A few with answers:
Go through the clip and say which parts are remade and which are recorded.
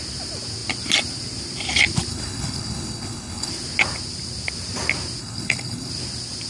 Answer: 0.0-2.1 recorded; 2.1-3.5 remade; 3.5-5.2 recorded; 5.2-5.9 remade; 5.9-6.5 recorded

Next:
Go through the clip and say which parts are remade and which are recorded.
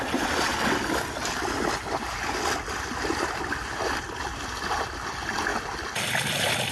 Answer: 0.0-6.7 recorded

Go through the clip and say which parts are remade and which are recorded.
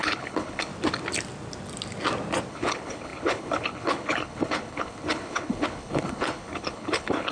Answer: 0.0-0.7 remade; 0.7-2.5 recorded; 2.5-7.3 remade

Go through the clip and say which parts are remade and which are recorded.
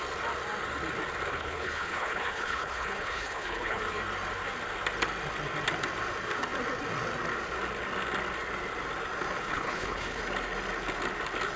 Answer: 0.0-1.3 recorded; 1.3-3.8 remade; 3.8-9.4 recorded; 9.4-10.2 remade; 10.2-11.6 recorded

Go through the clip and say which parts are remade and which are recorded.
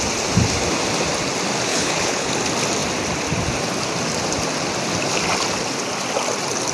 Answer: 0.0-1.7 recorded; 1.7-2.3 remade; 2.3-6.7 recorded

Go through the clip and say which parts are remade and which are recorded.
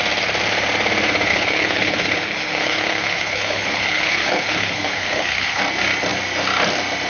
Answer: 0.0-1.3 recorded; 1.3-5.6 remade; 5.6-7.1 recorded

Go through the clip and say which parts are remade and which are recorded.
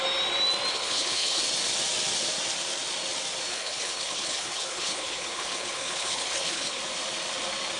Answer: 0.0-0.7 recorded; 0.7-1.4 remade; 1.4-3.5 recorded; 3.5-6.8 remade; 6.8-7.8 recorded